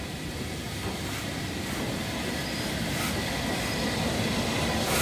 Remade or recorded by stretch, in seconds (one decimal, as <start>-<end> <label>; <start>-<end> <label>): 0.0-5.0 recorded